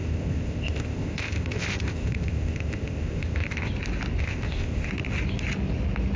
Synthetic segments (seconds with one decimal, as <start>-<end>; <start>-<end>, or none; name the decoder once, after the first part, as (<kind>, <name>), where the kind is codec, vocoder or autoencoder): 0.0-3.7 (codec, ZipCodec); 4.2-4.9